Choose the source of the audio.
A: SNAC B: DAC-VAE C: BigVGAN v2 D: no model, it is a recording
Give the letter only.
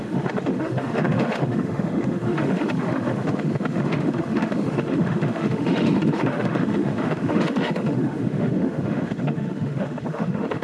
B